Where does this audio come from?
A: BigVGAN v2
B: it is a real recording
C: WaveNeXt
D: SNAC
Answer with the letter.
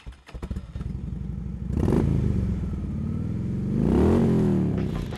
B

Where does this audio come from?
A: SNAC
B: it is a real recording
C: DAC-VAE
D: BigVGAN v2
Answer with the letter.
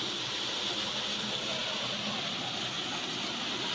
B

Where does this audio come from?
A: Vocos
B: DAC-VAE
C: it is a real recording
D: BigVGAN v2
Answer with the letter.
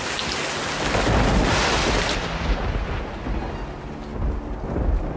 C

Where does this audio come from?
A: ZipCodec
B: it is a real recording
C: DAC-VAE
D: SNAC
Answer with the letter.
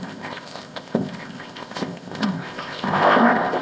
A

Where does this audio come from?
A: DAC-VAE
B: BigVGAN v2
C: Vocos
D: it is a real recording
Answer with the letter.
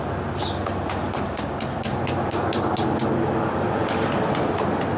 D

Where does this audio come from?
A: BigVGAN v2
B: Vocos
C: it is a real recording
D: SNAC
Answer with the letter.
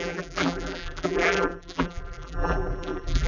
A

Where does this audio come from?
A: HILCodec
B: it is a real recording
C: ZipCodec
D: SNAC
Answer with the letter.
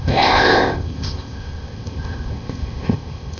C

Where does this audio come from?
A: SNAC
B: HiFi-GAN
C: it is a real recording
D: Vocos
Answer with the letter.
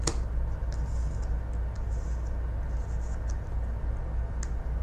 C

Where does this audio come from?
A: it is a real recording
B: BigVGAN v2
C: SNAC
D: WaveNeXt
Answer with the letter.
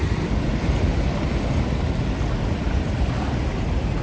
A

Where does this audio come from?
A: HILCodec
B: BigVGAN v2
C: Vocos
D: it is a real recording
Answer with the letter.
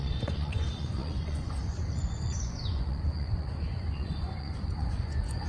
C